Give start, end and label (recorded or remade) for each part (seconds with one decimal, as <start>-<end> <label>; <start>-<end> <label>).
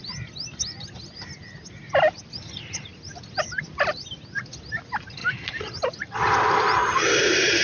0.0-5.2 recorded; 5.2-6.0 remade; 6.0-7.6 recorded